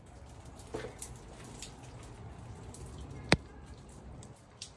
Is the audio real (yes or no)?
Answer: yes